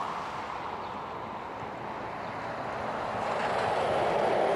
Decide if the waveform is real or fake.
real